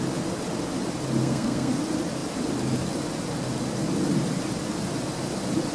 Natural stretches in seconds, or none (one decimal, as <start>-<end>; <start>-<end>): 0.0-1.2; 1.7-5.7